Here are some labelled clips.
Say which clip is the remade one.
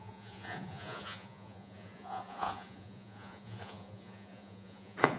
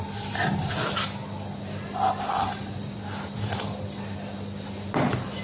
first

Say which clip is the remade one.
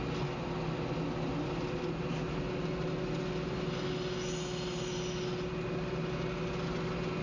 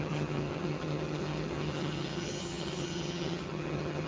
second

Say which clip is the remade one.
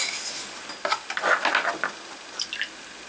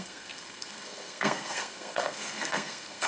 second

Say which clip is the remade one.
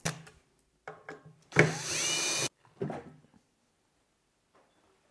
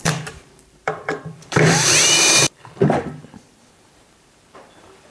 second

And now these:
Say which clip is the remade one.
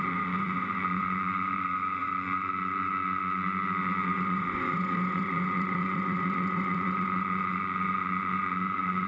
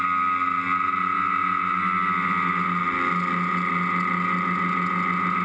first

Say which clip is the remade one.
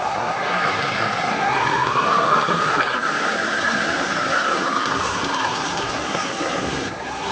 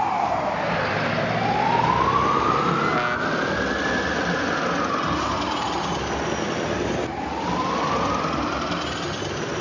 first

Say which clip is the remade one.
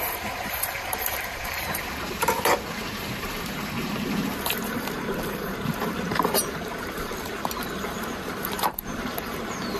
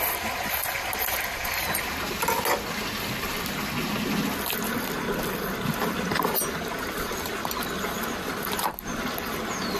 first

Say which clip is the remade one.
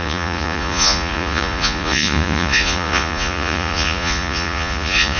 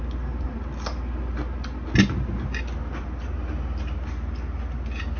first